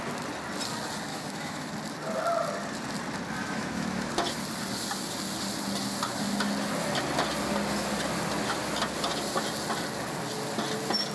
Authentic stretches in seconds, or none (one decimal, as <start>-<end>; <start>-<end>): 0.0-1.1; 1.7-3.4; 4.1-11.1